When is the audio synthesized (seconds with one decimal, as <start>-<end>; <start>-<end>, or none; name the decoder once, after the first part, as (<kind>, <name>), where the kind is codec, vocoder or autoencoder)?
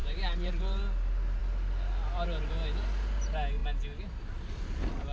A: 0.0-0.8 (vocoder, BigVGAN v2)